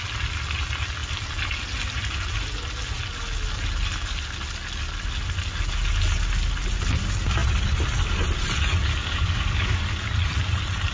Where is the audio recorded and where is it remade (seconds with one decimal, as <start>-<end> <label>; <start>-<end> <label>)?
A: 0.0-9.0 recorded; 9.0-9.8 remade; 9.8-10.9 recorded